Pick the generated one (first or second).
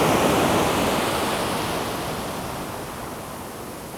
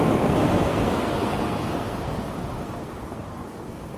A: second